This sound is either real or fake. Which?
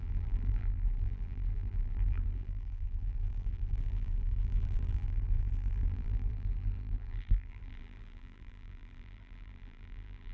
fake